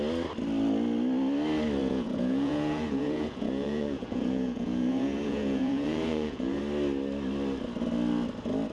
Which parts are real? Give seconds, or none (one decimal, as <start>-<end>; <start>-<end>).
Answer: 0.0-1.8; 6.6-8.7